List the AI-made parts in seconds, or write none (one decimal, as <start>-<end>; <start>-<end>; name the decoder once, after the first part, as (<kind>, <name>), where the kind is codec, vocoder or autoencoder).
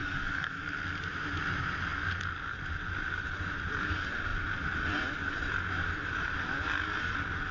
0.0-0.6 (codec, SNAC)